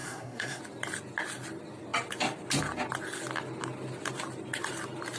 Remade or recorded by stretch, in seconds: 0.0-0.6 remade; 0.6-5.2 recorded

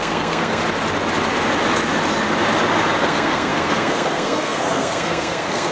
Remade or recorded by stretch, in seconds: 0.0-0.6 remade; 0.6-3.0 recorded; 3.0-5.7 remade

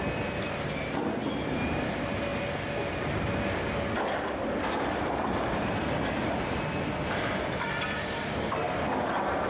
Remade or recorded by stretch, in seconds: 0.0-9.5 recorded